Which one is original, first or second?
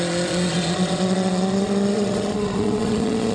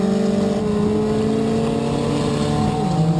second